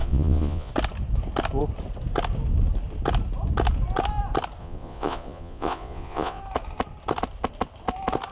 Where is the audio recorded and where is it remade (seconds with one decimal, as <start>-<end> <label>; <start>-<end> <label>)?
0.0-0.7 remade; 0.7-4.6 recorded; 4.6-6.4 remade; 6.4-8.3 recorded

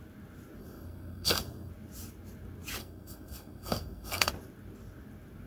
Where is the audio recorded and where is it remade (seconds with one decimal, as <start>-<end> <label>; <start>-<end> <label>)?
0.0-0.6 recorded; 0.6-1.7 remade; 1.7-2.8 recorded; 2.8-4.3 remade; 4.3-5.5 recorded

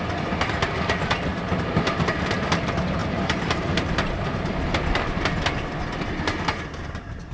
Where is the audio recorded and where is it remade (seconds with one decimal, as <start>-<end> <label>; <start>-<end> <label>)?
0.0-1.3 recorded; 1.3-2.1 remade; 2.1-3.0 recorded; 3.0-4.6 remade; 4.6-6.8 recorded; 6.8-7.3 remade

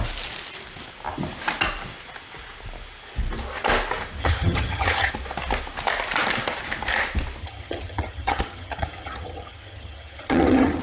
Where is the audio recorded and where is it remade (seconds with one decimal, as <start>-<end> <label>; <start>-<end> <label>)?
0.0-4.2 recorded; 4.2-5.1 remade; 5.1-7.4 recorded; 7.4-10.8 remade